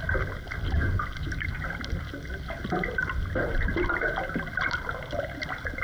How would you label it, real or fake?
real